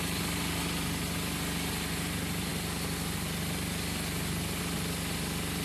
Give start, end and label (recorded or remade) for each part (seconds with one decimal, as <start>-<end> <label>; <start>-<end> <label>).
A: 0.0-5.6 recorded